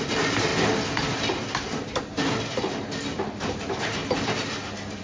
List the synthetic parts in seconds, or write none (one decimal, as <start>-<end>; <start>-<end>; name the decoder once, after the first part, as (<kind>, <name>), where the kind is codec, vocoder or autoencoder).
0.0-0.5 (vocoder, BigVGAN v2); 3.5-4.0